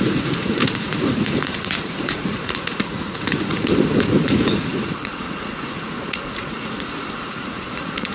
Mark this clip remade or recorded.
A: remade